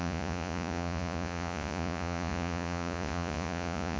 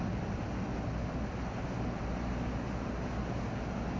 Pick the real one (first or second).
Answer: second